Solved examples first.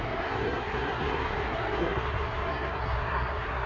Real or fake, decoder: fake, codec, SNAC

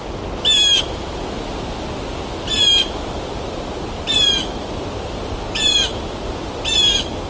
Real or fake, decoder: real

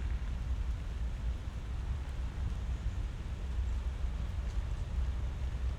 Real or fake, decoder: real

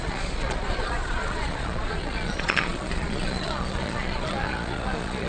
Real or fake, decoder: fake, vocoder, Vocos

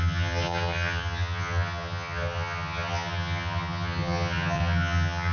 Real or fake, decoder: fake, vocoder, HiFi-GAN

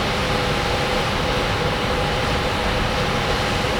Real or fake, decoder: real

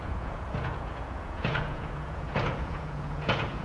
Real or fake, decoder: fake, vocoder, Vocos